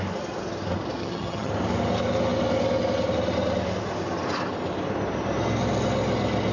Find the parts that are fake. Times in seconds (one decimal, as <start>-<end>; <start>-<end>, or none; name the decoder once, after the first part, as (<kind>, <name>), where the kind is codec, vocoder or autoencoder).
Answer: 1.0-1.5 (vocoder, HiFi-GAN)